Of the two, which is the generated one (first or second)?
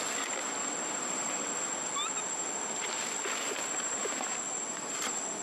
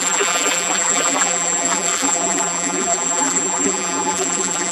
second